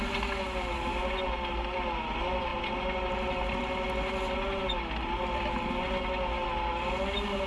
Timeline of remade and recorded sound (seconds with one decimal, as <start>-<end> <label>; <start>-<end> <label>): 0.0-7.5 recorded